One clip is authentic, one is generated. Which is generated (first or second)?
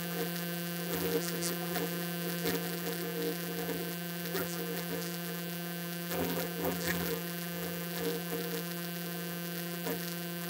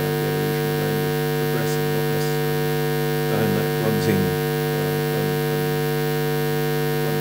first